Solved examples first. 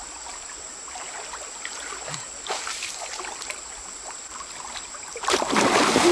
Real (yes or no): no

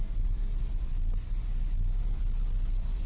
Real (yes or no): yes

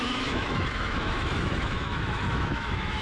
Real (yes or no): no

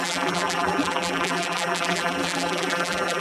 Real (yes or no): no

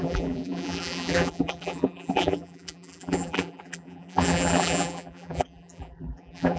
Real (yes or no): no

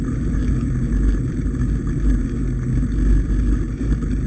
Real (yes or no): yes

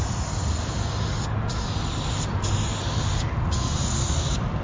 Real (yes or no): yes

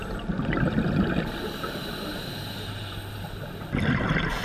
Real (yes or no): yes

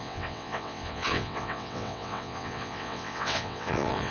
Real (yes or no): no